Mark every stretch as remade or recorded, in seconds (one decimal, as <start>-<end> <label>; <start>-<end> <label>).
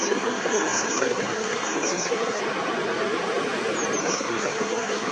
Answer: 0.0-2.4 remade; 2.4-4.0 recorded; 4.0-5.1 remade